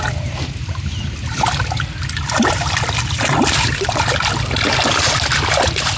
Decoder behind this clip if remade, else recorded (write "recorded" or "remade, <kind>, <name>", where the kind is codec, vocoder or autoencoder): recorded